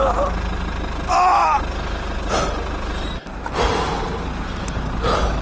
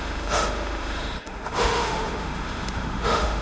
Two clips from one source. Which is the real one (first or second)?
first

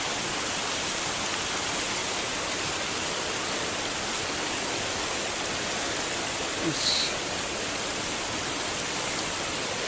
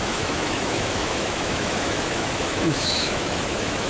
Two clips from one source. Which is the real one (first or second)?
first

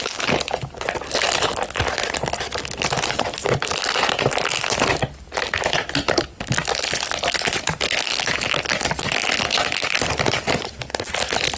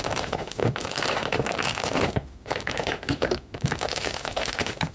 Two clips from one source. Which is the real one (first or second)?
first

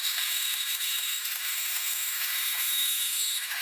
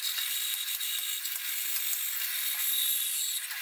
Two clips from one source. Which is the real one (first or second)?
second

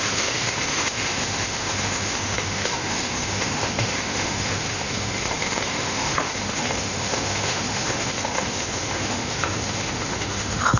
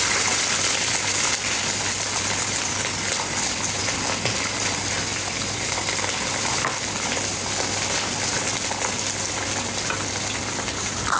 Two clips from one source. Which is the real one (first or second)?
second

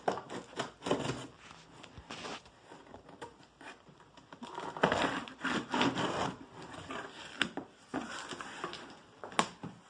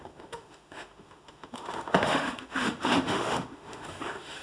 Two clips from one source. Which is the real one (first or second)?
first